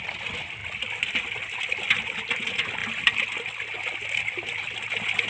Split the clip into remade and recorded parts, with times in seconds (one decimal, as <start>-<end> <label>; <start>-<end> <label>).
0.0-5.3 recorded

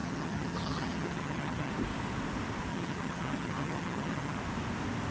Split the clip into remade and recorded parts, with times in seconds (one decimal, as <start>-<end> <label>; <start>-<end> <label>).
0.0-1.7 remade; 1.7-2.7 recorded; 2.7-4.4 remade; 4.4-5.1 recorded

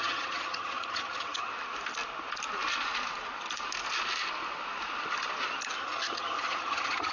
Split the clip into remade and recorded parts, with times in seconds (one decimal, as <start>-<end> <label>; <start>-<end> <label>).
0.0-1.5 remade; 1.5-5.8 recorded; 5.8-7.1 remade